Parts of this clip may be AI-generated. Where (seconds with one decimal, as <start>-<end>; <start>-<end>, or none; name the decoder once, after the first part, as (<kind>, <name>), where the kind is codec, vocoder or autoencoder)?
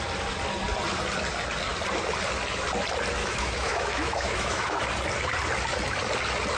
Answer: 3.2-4.8 (autoencoder, DAC-VAE)